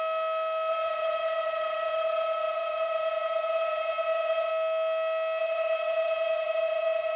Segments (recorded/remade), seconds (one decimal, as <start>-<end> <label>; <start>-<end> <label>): 0.0-0.7 recorded; 0.7-4.5 remade; 4.5-5.4 recorded; 5.4-7.2 remade